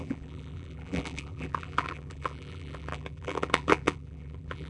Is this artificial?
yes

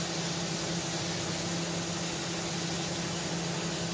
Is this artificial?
no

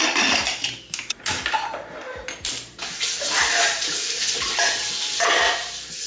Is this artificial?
yes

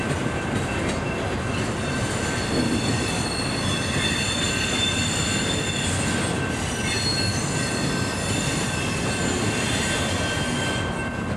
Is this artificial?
no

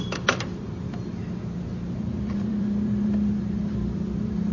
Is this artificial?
yes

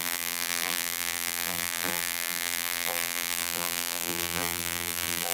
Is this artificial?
yes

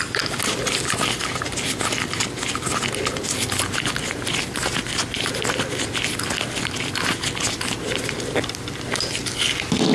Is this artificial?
no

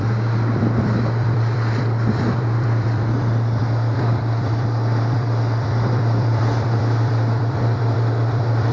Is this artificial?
yes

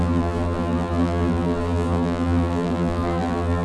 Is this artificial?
yes